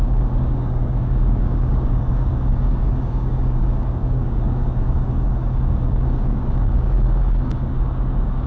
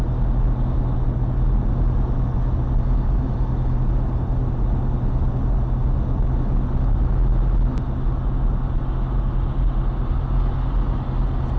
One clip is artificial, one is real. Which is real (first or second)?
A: second